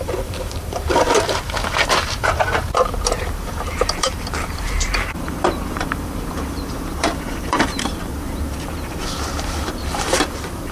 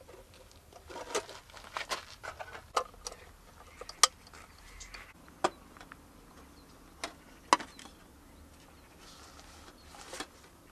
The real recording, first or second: second